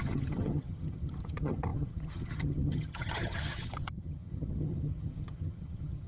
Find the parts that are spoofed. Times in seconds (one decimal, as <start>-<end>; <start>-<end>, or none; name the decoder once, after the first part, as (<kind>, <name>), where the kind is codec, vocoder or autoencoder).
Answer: 0.0-6.1 (vocoder, HiFi-GAN)